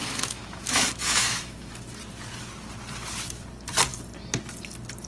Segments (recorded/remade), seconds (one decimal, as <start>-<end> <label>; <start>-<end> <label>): 0.0-1.7 remade; 1.7-5.1 recorded